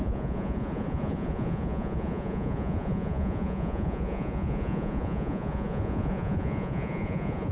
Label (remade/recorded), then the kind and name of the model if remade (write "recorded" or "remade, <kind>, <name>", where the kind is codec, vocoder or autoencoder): remade, vocoder, Vocos